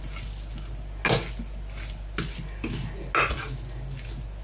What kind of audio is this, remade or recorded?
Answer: recorded